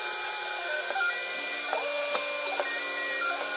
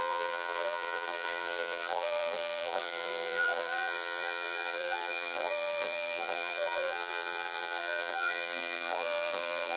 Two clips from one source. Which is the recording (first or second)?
first